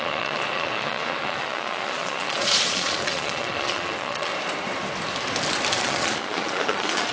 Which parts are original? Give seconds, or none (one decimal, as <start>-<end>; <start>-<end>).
4.3-5.8